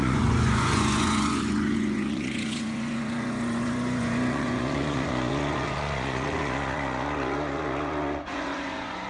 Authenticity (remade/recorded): remade